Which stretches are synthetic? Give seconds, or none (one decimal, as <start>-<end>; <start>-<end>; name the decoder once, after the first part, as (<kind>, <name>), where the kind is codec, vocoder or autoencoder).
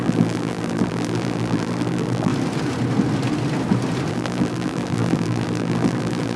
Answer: 0.0-2.3 (vocoder, BigVGAN v2); 4.1-6.4